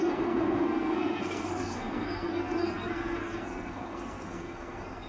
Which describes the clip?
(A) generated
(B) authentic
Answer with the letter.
A